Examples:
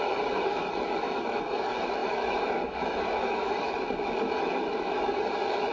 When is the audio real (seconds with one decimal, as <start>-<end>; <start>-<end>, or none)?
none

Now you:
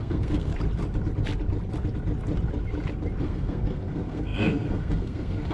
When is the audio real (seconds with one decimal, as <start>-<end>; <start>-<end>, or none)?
0.5-3.2

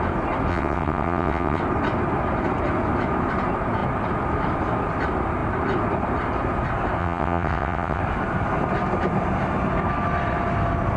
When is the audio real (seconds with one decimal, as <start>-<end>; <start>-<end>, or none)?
0.0-0.5; 1.6-7.0; 8.0-11.0

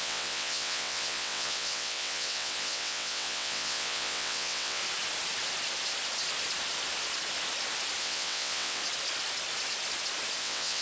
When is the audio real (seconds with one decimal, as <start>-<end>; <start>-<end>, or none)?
4.8-8.0; 8.8-10.4

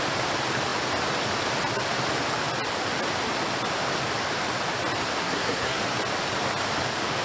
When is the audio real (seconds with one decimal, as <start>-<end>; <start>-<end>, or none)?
0.0-5.2; 5.8-7.2